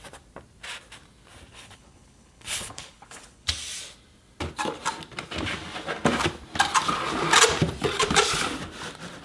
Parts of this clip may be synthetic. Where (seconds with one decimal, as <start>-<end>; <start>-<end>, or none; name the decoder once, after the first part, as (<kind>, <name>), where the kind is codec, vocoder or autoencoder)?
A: 1.5-3.5 (codec, HILCodec)